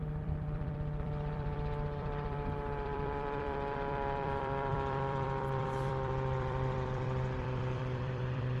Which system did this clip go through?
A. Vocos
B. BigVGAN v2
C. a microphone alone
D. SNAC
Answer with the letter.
B